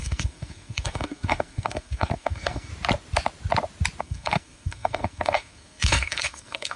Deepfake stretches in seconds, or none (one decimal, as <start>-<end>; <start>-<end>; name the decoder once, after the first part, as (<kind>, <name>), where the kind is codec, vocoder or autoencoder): 0.0-2.7 (codec, SNAC); 4.0-6.8